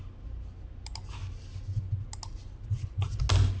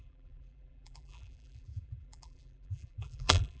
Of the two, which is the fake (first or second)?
second